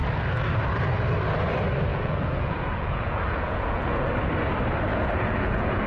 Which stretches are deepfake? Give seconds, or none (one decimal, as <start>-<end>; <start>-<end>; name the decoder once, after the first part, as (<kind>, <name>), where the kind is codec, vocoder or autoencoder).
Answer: 1.9-4.1 (vocoder, Vocos); 4.9-5.9